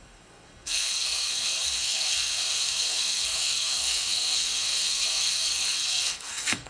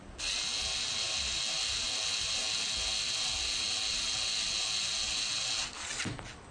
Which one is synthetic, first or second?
first